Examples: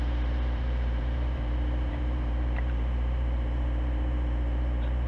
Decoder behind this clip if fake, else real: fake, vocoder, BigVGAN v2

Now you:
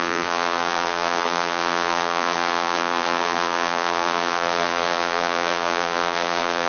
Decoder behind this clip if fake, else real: fake, vocoder, BigVGAN v2